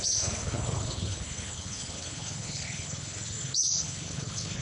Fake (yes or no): yes